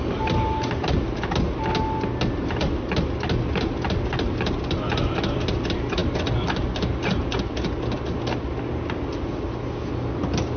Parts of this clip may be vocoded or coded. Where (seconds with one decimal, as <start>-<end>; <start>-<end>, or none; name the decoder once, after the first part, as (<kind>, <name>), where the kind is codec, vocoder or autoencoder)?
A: none